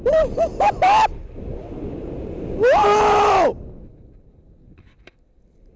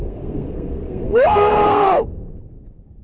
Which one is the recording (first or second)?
first